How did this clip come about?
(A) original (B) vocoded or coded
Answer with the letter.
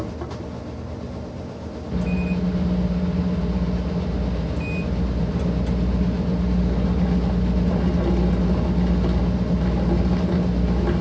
A